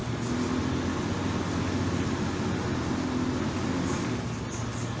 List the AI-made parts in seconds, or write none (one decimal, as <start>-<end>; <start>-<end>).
none